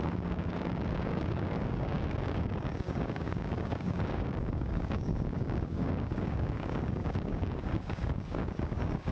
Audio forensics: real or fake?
fake